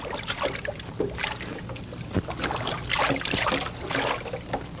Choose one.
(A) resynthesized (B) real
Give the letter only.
B